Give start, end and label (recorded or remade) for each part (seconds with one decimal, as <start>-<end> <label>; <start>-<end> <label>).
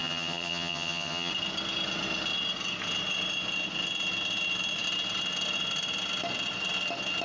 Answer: 0.0-1.3 remade; 1.3-7.2 recorded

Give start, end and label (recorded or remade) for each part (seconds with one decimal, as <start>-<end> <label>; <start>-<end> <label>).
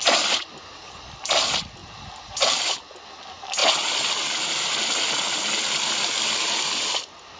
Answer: 0.0-1.8 recorded; 1.8-2.7 remade; 2.7-7.4 recorded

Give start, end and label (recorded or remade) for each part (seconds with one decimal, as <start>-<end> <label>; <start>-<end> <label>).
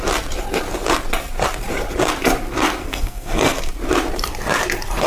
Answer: 0.0-2.8 recorded; 2.8-3.7 remade; 3.7-5.1 recorded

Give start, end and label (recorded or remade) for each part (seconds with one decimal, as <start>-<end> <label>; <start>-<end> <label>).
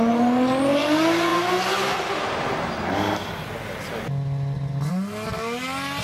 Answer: 0.0-6.0 recorded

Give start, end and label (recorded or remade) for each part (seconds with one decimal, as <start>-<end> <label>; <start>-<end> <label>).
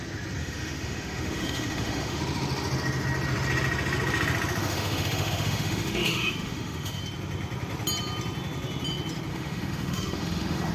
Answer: 0.0-0.4 recorded; 0.4-2.2 remade; 2.2-4.6 recorded; 4.6-7.0 remade; 7.0-9.3 recorded; 9.3-10.7 remade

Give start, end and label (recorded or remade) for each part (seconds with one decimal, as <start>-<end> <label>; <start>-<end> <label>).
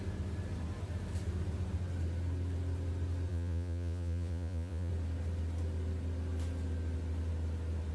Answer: 0.0-3.3 recorded; 3.3-4.9 remade; 4.9-7.9 recorded